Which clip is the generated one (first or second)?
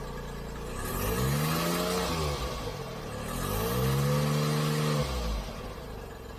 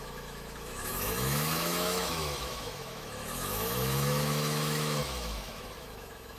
second